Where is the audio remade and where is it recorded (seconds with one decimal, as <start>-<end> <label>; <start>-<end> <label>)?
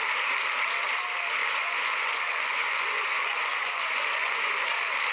0.0-1.4 recorded; 1.4-4.5 remade; 4.5-5.1 recorded